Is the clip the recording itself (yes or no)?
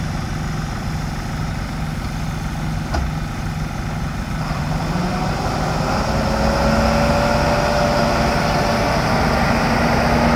yes